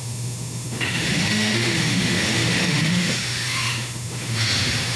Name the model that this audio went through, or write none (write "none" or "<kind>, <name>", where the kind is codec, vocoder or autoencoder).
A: autoencoder, DAC-VAE